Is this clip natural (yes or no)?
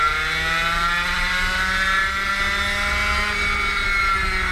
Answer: yes